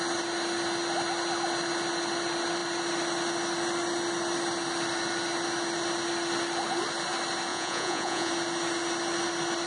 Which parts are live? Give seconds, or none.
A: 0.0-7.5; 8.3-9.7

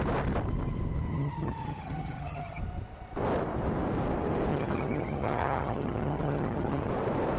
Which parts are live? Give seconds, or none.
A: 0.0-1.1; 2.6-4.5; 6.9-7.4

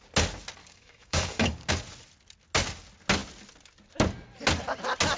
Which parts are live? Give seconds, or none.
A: 0.0-0.6; 1.7-5.2